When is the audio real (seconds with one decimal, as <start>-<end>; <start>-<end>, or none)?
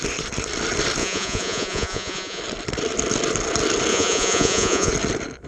0.0-1.0; 2.4-3.9; 4.9-5.5